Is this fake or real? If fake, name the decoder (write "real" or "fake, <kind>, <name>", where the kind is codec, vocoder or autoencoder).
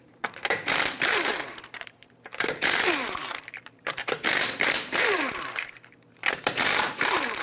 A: fake, vocoder, BigVGAN v2